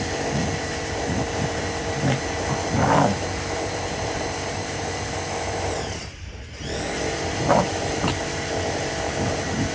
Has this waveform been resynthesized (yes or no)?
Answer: yes